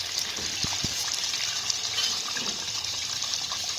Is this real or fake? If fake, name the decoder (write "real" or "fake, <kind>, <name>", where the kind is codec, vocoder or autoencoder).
real